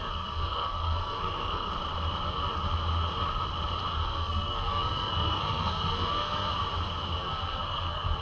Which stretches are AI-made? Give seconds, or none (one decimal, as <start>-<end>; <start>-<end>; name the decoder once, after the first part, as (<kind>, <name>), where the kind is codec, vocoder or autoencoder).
0.0-1.7 (codec, SNAC); 3.9-6.5; 7.2-8.2